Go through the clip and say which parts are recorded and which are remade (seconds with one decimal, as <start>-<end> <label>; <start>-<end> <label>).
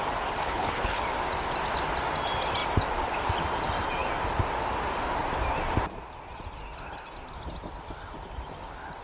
0.0-0.4 recorded; 0.4-1.0 remade; 1.0-9.0 recorded